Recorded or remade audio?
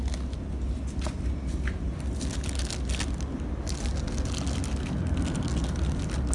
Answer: recorded